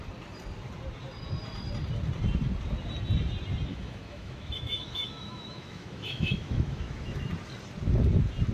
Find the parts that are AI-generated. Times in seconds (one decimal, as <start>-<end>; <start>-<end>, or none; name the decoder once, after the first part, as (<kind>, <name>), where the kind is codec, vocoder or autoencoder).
3.7-7.3 (autoencoder, DAC-VAE)